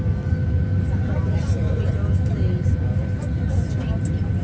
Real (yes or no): yes